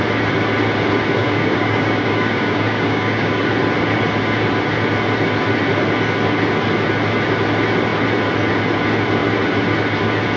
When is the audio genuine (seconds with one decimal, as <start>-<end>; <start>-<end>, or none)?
0.0-1.2; 3.5-10.4